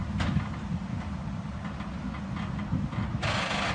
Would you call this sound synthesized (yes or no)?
no